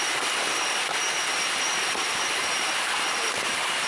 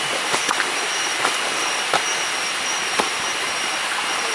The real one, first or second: second